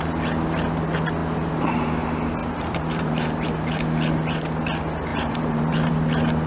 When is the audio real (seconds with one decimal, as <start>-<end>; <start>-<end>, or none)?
0.0-1.2; 1.9-2.4; 3.3-5.1; 5.9-6.5